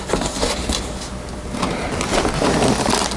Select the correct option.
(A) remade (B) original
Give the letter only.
B